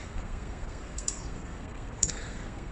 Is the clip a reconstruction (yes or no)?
yes